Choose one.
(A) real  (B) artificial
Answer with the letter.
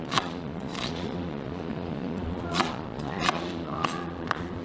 B